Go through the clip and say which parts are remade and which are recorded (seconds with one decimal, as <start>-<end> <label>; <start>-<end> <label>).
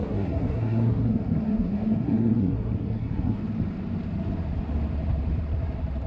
0.0-3.4 remade; 3.4-6.1 recorded